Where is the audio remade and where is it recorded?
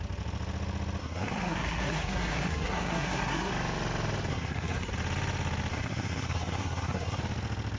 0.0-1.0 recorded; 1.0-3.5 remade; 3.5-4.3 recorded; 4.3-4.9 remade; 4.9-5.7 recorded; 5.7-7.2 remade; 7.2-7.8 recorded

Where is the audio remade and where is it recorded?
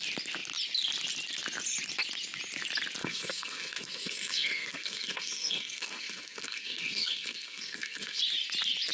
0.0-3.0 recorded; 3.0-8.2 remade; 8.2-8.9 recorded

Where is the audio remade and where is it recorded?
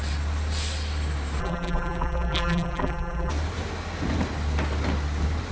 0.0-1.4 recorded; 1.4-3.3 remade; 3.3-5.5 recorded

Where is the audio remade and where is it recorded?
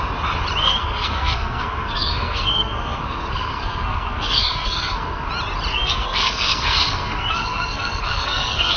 0.0-0.6 recorded; 0.6-5.3 remade; 5.3-5.7 recorded; 5.7-8.8 remade